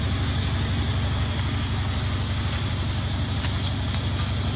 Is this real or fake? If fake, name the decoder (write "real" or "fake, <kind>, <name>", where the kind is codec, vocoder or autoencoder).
real